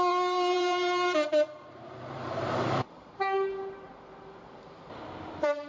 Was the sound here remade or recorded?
remade